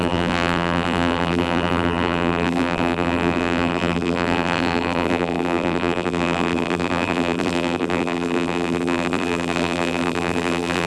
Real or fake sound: fake